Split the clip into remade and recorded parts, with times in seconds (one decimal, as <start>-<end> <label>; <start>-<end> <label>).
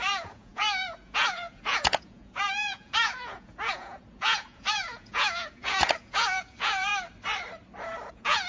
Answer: 0.0-6.9 remade; 6.9-8.1 recorded; 8.1-8.5 remade